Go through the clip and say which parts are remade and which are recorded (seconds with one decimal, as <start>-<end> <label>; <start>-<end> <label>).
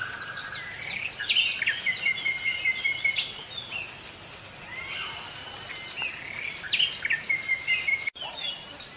0.0-9.0 recorded